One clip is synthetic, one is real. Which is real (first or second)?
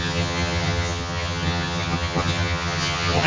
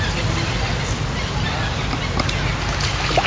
second